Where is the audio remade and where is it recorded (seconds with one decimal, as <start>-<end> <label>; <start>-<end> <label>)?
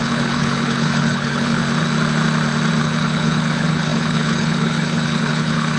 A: 0.0-1.6 remade; 1.6-2.8 recorded; 2.8-5.8 remade